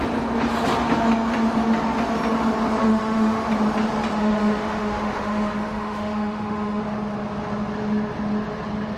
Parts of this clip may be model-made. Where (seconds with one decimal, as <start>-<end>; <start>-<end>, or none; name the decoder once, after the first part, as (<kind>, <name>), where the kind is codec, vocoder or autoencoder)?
2.8-3.5 (autoencoder, DAC-VAE); 4.2-6.8